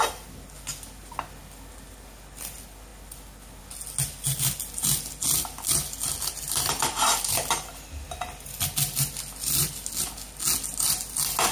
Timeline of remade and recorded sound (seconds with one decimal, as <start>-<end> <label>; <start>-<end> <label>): 0.0-11.5 recorded